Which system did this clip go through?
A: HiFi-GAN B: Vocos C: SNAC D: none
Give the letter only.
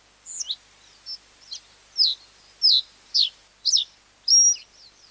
D